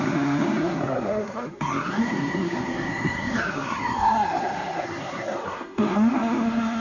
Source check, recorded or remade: remade